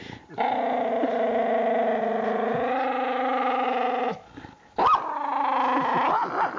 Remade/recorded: recorded